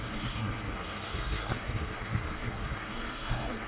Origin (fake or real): fake